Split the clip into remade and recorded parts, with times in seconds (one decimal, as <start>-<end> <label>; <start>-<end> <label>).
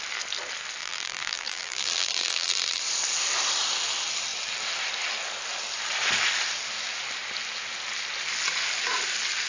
0.0-0.8 recorded; 0.8-2.8 remade; 2.8-9.5 recorded